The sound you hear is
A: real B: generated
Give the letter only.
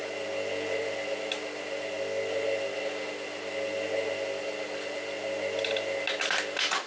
A